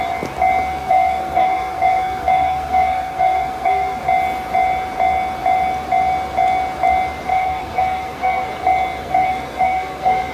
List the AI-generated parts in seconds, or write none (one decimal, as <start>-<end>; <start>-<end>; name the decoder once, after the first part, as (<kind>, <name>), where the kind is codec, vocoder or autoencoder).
0.8-4.0 (codec, SNAC); 7.3-8.5; 9.0-10.3